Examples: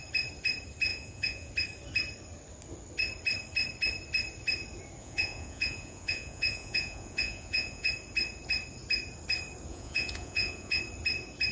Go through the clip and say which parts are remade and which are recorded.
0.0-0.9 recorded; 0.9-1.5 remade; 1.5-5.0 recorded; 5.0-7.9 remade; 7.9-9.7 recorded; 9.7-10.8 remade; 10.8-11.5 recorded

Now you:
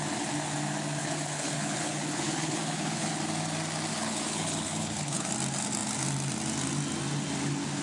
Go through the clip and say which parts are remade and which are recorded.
0.0-1.0 recorded; 1.0-3.2 remade; 3.2-3.9 recorded; 3.9-5.3 remade; 5.3-7.8 recorded